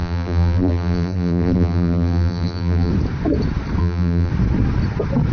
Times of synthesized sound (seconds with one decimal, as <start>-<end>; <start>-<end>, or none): 0.0-2.9; 3.8-4.3